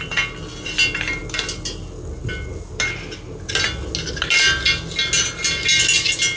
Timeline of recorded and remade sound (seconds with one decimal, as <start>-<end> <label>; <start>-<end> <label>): 0.0-6.4 recorded